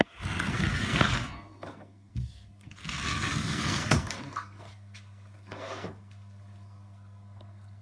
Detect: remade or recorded remade